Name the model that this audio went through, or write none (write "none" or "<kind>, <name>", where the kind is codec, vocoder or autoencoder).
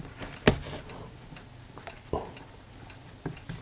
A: none